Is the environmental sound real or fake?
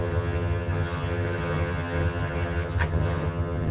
fake